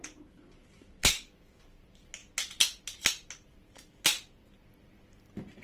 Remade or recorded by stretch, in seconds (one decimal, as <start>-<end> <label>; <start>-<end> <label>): 0.0-1.0 recorded; 1.0-1.6 remade; 1.6-5.6 recorded